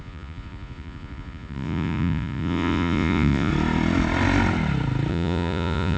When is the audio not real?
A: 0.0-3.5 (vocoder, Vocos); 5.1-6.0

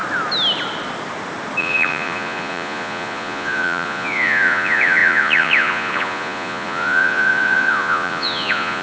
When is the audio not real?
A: 1.6-8.8 (vocoder, Vocos)